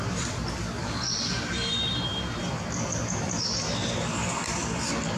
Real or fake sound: fake